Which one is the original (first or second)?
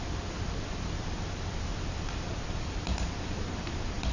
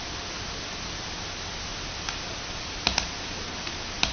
second